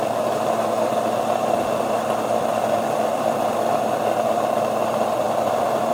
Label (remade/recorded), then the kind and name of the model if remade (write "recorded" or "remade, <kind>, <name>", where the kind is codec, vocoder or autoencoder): remade, vocoder, BigVGAN v2